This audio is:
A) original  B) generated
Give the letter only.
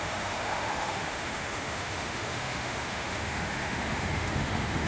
B